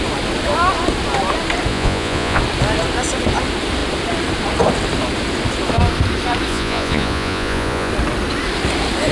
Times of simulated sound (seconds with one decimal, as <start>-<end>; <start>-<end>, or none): 1.7-2.4; 6.5-7.9